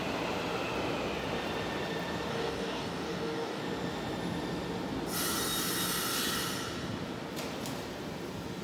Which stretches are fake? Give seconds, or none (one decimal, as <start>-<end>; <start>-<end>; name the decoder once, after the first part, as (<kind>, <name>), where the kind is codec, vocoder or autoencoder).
2.3-3.6 (codec, DAC)